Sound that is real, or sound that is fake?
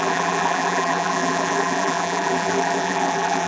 fake